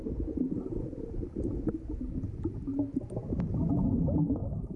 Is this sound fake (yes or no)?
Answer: no